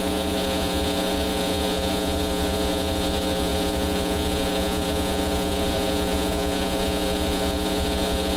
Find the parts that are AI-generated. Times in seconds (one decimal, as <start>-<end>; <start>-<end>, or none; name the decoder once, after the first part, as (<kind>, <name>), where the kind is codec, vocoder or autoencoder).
0.0-8.4 (vocoder, Vocos)